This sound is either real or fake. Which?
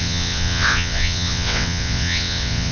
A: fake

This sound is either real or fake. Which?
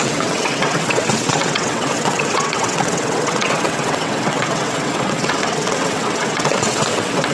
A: fake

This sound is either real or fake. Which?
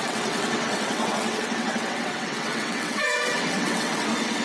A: fake